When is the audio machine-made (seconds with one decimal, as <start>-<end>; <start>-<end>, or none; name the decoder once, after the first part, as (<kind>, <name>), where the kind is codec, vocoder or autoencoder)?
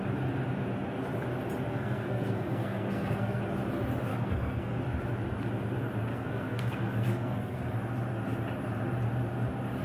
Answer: 1.7-3.4 (codec, SNAC); 4.1-4.8; 6.1-7.7